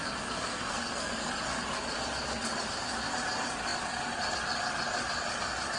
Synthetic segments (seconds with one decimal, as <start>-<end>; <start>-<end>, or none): 0.5-1.3